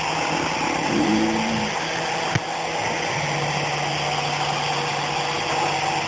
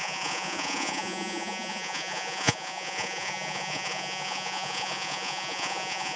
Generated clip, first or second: second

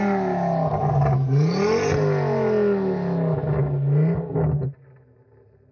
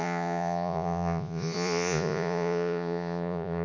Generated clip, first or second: second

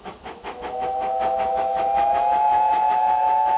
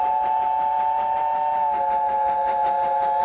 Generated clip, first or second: first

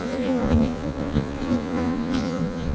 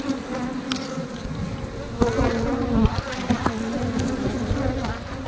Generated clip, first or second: first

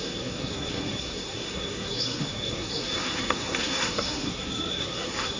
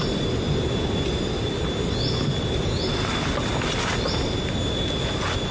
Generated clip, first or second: first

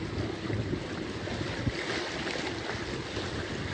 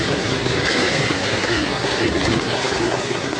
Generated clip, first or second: second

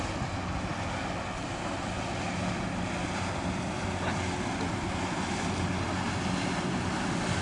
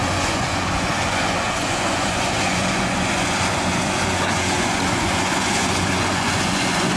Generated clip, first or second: second